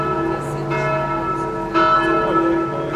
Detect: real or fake real